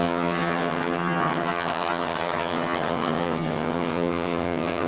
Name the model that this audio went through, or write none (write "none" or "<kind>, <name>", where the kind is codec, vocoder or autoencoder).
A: vocoder, HiFi-GAN